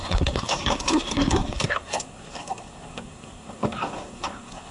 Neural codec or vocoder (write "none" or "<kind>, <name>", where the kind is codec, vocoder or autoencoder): codec, SNAC